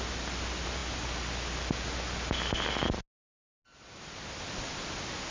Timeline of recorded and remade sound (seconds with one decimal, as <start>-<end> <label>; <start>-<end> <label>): 0.0-5.3 recorded

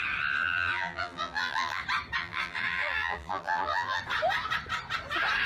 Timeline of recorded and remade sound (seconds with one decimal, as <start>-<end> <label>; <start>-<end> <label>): 0.0-0.4 recorded; 0.4-1.8 remade; 1.8-2.2 recorded; 2.2-4.0 remade; 4.0-5.5 recorded

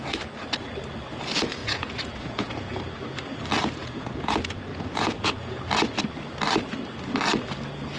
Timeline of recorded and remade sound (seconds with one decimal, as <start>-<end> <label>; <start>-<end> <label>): 0.0-1.6 recorded; 1.6-2.8 remade; 2.8-3.8 recorded; 3.8-4.3 remade; 4.3-4.7 recorded; 4.7-5.6 remade; 5.6-8.0 recorded